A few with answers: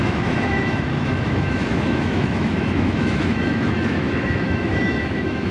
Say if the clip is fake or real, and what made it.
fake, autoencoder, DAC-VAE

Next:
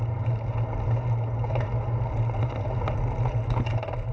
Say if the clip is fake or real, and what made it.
real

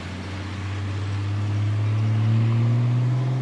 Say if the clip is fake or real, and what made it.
real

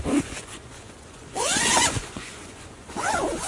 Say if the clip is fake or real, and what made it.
fake, vocoder, Vocos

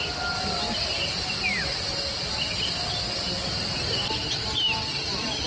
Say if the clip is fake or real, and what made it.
real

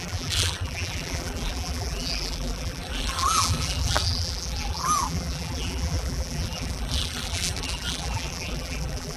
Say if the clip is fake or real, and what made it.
fake, vocoder, BigVGAN v2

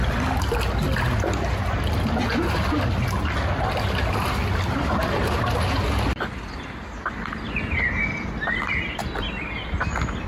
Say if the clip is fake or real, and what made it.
real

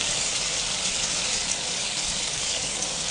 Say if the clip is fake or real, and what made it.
fake, codec, DAC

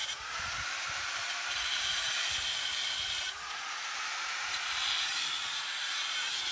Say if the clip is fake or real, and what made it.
fake, vocoder, BigVGAN v2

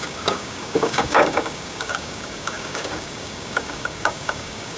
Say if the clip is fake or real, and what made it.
fake, codec, DAC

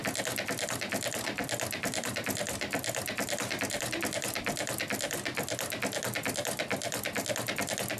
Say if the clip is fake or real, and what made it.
real